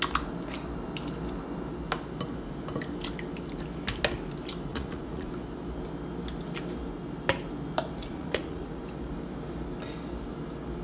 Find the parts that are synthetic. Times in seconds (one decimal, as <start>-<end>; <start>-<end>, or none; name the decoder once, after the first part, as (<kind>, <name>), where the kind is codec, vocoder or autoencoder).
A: 4.7-5.3 (vocoder, Vocos); 8.0-8.8